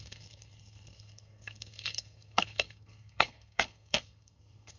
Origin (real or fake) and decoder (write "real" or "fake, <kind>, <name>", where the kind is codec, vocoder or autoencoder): fake, codec, SNAC